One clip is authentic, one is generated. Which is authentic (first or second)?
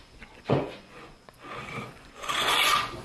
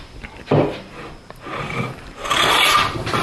second